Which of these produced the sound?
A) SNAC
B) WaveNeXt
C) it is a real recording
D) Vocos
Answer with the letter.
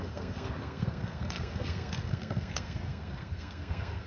A